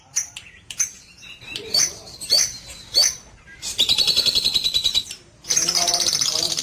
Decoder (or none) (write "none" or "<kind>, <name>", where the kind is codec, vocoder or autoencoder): vocoder, BigVGAN v2